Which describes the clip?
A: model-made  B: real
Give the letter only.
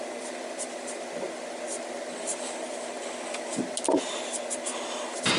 B